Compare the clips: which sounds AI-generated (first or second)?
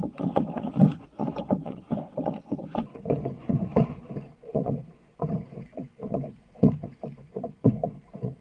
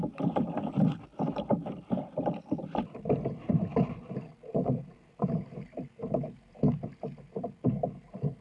first